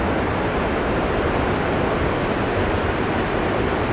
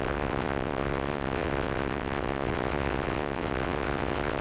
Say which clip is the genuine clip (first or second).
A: first